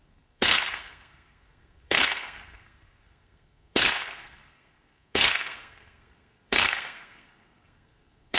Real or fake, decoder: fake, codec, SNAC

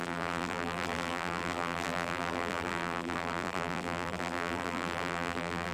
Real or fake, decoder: fake, vocoder, BigVGAN v2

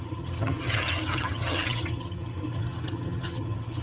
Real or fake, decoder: fake, vocoder, HiFi-GAN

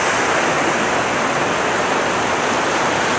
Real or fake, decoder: real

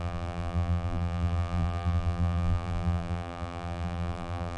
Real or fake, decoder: fake, vocoder, BigVGAN v2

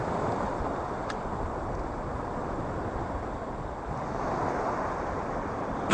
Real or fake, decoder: real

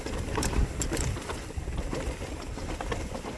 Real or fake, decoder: real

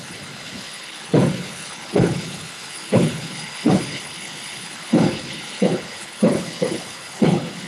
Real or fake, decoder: fake, codec, HILCodec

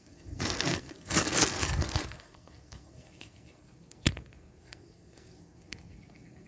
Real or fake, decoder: fake, codec, SNAC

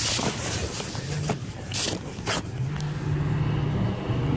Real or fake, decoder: real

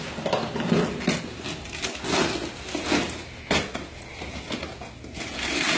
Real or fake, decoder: real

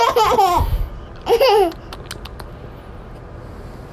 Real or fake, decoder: real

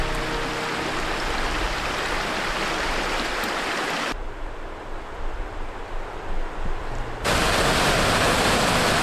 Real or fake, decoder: real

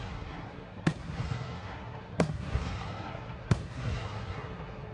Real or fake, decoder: fake, codec, SNAC